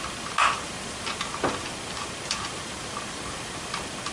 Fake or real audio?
real